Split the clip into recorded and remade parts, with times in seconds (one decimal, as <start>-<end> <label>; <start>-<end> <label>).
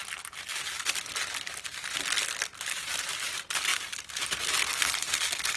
0.0-5.6 recorded